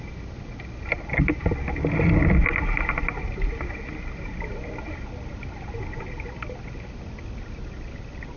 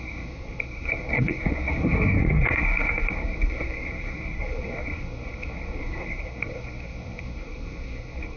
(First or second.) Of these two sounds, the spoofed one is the second